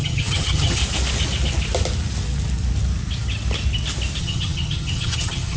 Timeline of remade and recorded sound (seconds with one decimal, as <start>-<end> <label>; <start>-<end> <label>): 0.0-0.8 remade; 0.8-4.2 recorded; 4.2-5.6 remade